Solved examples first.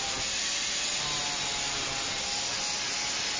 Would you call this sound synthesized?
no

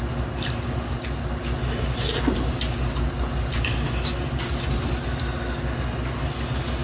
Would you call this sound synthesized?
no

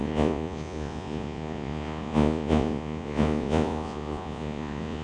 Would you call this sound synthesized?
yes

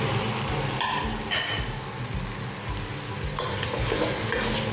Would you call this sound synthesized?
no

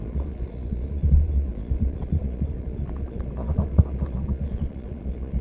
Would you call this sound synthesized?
yes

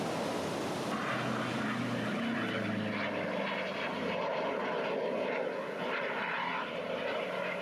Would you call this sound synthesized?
no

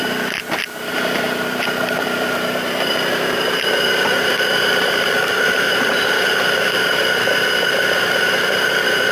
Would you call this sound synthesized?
yes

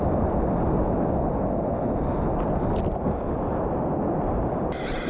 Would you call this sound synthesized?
no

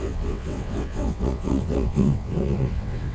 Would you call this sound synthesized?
yes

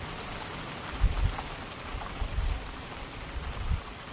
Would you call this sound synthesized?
no